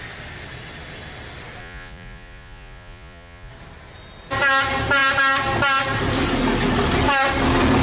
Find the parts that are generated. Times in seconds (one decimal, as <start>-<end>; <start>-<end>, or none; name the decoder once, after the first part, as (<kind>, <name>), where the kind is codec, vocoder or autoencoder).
1.6-3.5 (vocoder, Vocos)